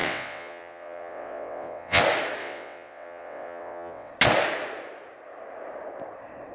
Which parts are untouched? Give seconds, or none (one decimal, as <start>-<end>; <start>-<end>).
2.0-2.4; 4.1-6.5